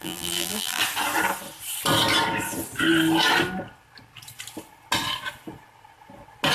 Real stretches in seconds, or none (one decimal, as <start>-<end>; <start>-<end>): 0.8-6.5

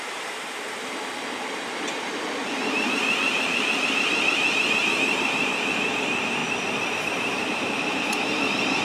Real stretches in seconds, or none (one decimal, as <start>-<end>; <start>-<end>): 6.4-7.0

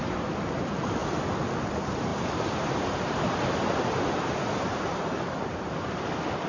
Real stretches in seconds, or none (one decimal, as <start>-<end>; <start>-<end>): 0.0-2.1; 5.1-6.5

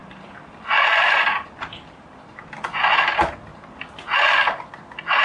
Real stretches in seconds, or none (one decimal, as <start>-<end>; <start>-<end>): 2.6-3.5; 4.7-5.2

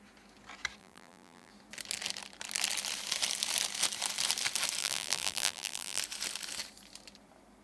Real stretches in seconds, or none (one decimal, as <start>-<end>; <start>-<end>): 0.0-0.8; 1.5-4.8; 6.0-7.6

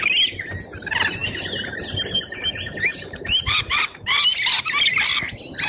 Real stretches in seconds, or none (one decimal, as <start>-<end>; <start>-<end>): 0.0-2.9; 3.8-5.7

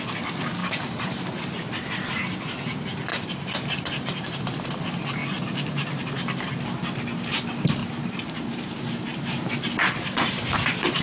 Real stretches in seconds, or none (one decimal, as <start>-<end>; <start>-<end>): 0.0-0.6; 1.1-3.1; 4.4-5.2; 6.5-7.8; 9.5-11.0